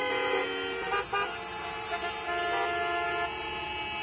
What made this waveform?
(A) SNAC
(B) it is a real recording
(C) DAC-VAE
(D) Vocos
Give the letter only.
B